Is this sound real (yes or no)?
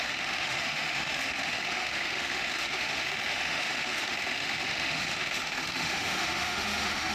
no